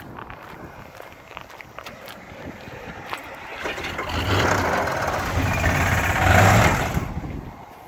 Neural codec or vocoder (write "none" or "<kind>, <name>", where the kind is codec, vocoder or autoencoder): none